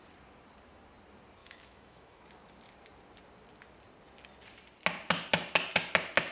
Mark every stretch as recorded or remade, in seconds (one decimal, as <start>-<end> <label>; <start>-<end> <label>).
0.0-1.4 recorded; 1.4-2.2 remade; 2.2-6.3 recorded